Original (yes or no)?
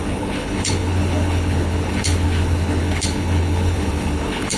no